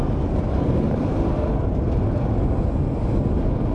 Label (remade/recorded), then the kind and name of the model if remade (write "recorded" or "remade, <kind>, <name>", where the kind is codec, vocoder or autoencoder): recorded